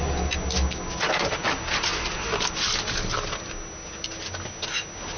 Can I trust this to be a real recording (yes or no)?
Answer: yes